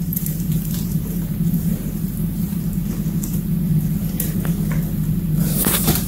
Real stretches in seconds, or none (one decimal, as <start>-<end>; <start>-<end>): 2.8-5.4